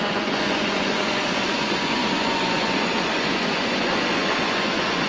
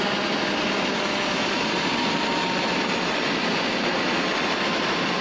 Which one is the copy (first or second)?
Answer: first